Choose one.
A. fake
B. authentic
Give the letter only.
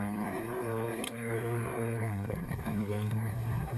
A